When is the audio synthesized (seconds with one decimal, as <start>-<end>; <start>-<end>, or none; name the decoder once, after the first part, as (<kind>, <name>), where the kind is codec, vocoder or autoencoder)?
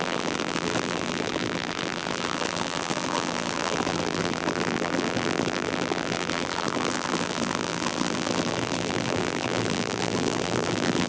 0.0-11.1 (vocoder, BigVGAN v2)